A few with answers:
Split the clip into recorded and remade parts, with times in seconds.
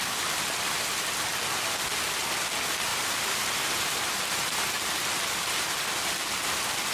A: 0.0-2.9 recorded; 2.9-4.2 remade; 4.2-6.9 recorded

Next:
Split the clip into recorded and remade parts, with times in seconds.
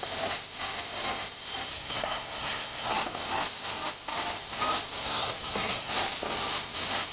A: 0.0-1.7 recorded; 1.7-2.9 remade; 2.9-5.0 recorded; 5.0-5.9 remade; 5.9-7.1 recorded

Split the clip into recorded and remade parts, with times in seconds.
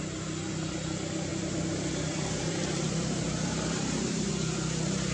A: 0.0-1.3 recorded; 1.3-4.3 remade; 4.3-5.1 recorded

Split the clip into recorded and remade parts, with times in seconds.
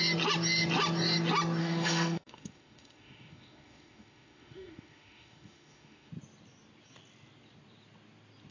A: 0.0-1.6 recorded; 1.6-6.1 remade; 6.1-8.5 recorded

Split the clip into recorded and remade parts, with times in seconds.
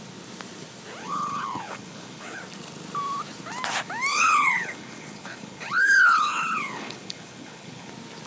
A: 0.0-1.0 recorded; 1.0-2.4 remade; 2.4-4.1 recorded; 4.1-7.9 remade; 7.9-8.3 recorded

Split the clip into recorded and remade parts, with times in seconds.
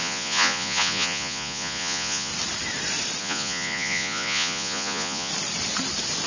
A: 0.0-2.3 remade; 2.3-3.2 recorded; 3.2-5.3 remade; 5.3-6.3 recorded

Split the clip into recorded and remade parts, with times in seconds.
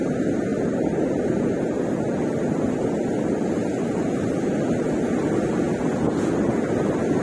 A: 0.0-7.2 recorded